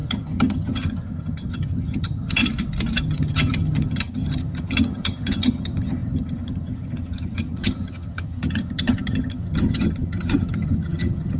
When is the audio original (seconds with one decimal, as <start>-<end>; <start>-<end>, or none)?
2.4-3.0

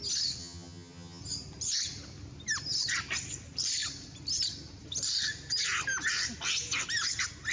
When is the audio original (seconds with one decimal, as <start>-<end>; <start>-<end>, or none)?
0.0-0.4; 1.2-7.5

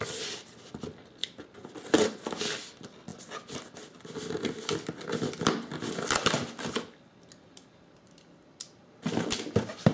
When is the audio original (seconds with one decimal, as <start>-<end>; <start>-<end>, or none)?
0.0-1.2; 1.7-9.9

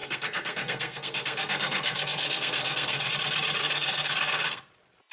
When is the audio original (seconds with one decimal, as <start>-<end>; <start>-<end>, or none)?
3.1-3.6; 4.6-5.1

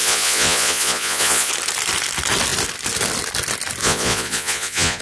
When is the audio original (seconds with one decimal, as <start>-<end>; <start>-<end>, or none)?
1.5-3.8

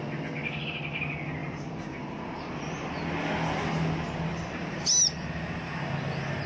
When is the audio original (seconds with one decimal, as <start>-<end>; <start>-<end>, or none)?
0.0-1.4; 2.1-4.3; 4.8-6.5

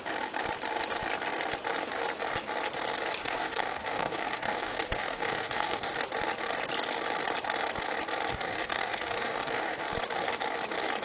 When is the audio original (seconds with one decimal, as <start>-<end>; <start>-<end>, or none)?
0.0-3.2; 6.0-8.3; 9.8-11.0